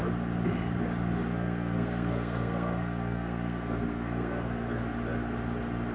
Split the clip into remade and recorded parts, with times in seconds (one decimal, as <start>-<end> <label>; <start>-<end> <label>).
0.0-1.3 recorded; 1.3-4.8 remade; 4.8-5.9 recorded